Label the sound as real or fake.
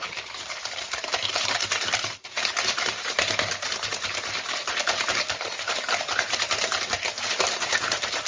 fake